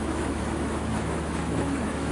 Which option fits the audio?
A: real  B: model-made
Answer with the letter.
B